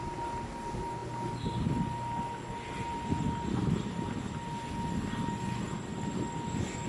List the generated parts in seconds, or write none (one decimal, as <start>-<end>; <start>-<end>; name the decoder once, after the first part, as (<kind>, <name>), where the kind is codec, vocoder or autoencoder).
none